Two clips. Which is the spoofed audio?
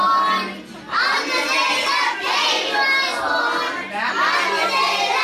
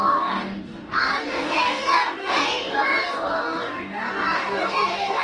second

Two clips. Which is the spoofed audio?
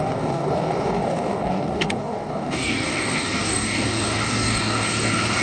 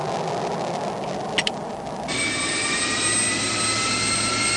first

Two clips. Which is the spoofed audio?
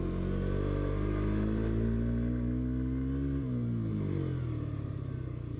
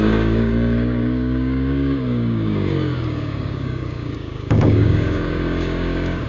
second